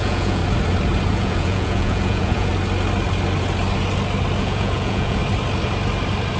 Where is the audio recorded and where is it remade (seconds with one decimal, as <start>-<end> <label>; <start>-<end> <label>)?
0.0-0.4 remade; 0.4-1.1 recorded; 1.1-2.5 remade; 2.5-4.4 recorded; 4.4-5.2 remade; 5.2-6.4 recorded